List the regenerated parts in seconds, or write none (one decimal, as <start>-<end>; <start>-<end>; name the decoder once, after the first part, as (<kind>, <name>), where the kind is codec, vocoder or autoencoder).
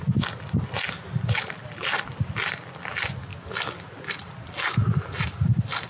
none